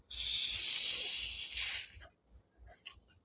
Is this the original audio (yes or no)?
yes